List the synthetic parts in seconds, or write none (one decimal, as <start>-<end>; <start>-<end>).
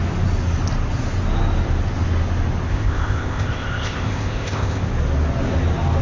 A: 2.7-4.9